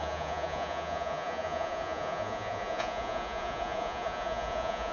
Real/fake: fake